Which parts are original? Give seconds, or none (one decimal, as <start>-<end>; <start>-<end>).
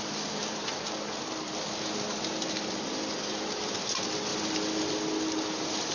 0.0-5.9